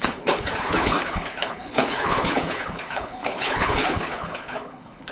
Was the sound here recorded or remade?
remade